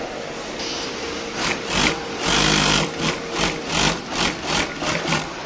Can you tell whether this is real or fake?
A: real